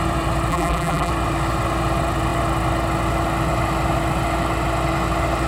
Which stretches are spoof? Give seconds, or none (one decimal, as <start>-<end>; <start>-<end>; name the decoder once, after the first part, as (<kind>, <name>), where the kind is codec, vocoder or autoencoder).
0.5-1.1 (vocoder, BigVGAN v2)

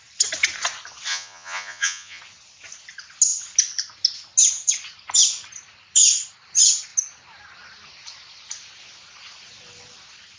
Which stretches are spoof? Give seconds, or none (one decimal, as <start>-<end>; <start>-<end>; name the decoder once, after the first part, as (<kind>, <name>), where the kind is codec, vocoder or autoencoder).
1.1-2.2 (vocoder, Vocos)

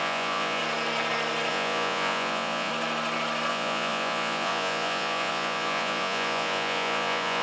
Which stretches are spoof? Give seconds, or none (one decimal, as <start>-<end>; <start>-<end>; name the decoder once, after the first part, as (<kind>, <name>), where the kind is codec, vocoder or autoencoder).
0.0-0.6 (vocoder, Vocos); 1.5-2.7; 3.5-7.4

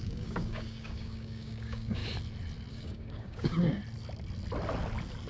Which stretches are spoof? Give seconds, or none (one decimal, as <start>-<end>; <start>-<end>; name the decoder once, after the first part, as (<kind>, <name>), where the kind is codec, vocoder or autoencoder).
0.0-2.0 (codec, DAC); 2.7-3.8

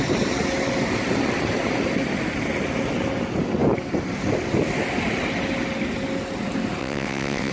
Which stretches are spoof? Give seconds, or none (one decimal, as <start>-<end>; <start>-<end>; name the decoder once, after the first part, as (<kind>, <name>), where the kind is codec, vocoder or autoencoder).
6.8-7.5 (vocoder, WaveNeXt)